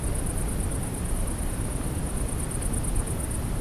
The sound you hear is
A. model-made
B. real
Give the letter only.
B